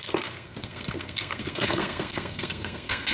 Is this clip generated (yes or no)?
yes